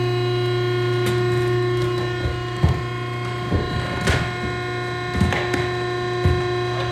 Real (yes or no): yes